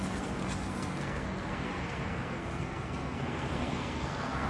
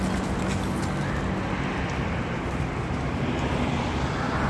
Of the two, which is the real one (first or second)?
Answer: second